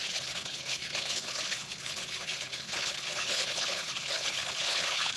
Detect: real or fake fake